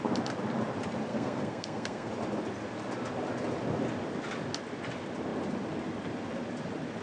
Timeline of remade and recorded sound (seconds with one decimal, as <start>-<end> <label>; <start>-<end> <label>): 0.0-1.1 recorded; 1.1-2.1 remade; 2.1-7.0 recorded